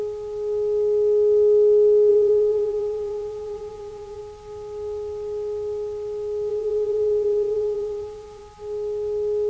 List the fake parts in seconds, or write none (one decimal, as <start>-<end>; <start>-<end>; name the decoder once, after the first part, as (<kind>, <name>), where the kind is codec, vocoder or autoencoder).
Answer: 2.1-4.2 (vocoder, Vocos); 6.5-8.4